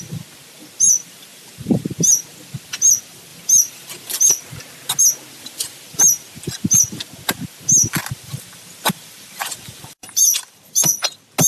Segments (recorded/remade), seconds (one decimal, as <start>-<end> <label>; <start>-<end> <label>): 0.0-1.3 recorded; 1.3-1.8 remade; 1.8-8.0 recorded; 8.0-10.8 remade; 10.8-11.5 recorded